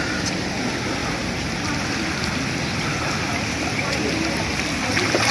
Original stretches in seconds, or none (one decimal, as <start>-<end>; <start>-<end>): 0.0-5.3